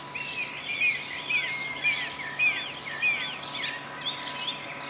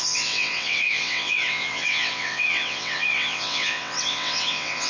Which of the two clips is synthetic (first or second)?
second